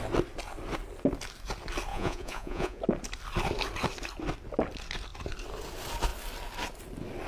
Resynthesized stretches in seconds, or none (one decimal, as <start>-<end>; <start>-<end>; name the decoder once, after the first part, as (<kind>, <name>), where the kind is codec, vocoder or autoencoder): 1.9-2.8 (vocoder, Vocos)